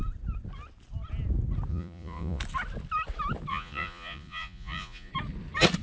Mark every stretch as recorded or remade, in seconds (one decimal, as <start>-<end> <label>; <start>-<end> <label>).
0.0-1.7 recorded; 1.7-2.4 remade; 2.4-3.5 recorded; 3.5-5.1 remade; 5.1-5.8 recorded